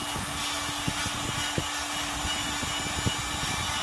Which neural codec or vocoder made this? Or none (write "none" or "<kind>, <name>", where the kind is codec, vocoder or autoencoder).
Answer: none